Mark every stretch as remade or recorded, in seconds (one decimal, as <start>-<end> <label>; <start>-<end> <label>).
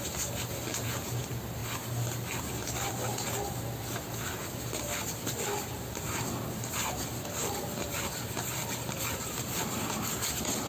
0.0-0.7 recorded; 0.7-1.2 remade; 1.2-10.7 recorded